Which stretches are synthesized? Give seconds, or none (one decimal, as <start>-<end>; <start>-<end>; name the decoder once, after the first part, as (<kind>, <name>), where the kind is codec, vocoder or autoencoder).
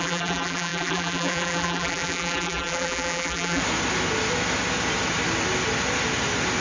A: 0.0-3.6 (vocoder, BigVGAN v2)